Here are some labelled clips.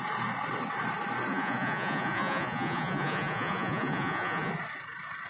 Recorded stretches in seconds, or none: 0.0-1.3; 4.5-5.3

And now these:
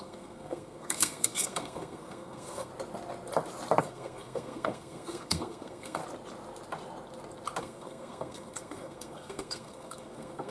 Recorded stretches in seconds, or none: 2.7-3.8; 6.0-7.6

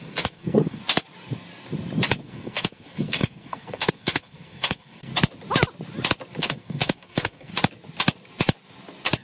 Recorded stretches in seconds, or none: 0.8-2.2; 5.1-6.4; 7.5-9.2

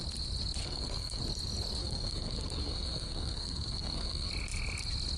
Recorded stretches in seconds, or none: 0.0-0.6; 1.2-1.8; 4.3-5.2

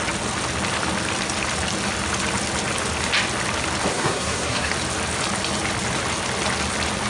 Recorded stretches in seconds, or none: 0.0-3.9; 4.7-7.1